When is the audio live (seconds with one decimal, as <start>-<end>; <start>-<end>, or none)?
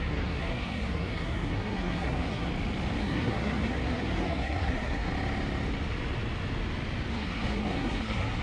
2.5-3.0; 5.1-7.1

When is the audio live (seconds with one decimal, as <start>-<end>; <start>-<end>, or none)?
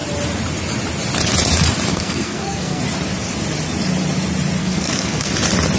0.0-1.9; 2.8-4.6; 5.3-5.8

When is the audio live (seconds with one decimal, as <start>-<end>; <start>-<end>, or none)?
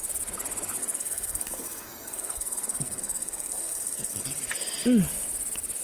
0.0-0.8; 4.2-5.8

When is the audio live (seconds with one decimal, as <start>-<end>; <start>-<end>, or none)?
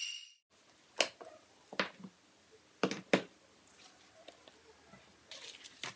0.0-6.0